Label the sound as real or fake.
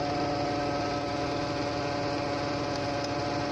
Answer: real